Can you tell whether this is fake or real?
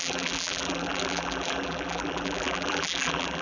fake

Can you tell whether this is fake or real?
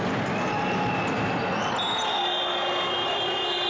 real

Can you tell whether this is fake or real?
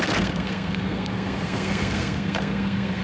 fake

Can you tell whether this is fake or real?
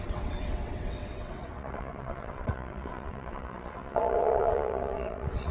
fake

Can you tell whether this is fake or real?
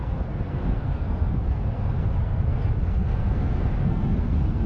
fake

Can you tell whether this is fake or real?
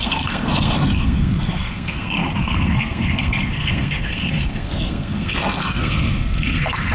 fake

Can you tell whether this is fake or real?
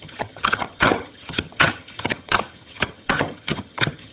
fake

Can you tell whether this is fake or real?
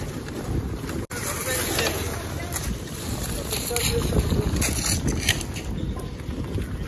real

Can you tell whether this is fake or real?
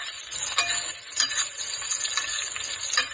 real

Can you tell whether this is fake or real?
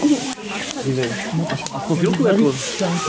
real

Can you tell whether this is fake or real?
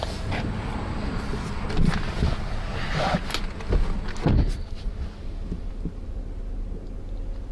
real